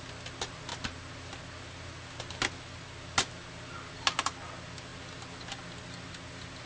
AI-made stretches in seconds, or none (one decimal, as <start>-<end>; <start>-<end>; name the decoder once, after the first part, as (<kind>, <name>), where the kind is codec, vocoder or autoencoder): none